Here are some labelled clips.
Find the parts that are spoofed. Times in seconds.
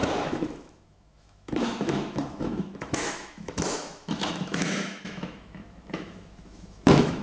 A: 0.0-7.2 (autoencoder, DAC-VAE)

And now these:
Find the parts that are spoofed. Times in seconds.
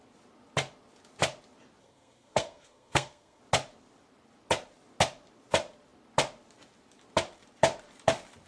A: 1.8-3.4 (codec, SNAC)